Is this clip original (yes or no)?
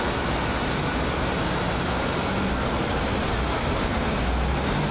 yes